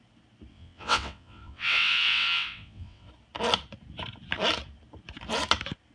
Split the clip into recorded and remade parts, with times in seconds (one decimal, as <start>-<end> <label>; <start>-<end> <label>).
0.0-0.5 recorded; 0.5-3.1 remade; 3.1-5.9 recorded